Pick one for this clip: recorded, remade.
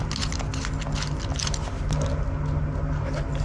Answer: recorded